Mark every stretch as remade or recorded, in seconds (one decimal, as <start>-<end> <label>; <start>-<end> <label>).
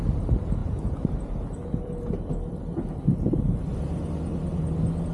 0.0-0.6 recorded; 0.6-3.7 remade; 3.7-5.1 recorded